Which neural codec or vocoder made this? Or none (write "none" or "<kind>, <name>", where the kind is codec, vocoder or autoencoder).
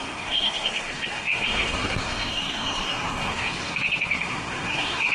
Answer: codec, SNAC